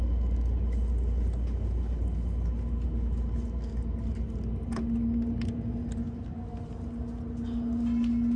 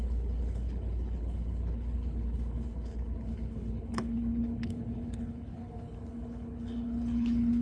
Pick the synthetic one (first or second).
second